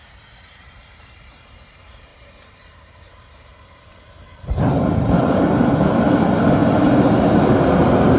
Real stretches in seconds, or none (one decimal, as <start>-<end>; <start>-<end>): none